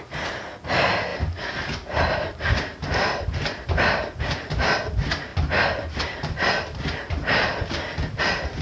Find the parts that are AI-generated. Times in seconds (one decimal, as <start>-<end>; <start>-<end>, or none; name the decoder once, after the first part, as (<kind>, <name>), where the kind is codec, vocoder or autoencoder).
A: 1.1-4.5 (vocoder, BigVGAN v2)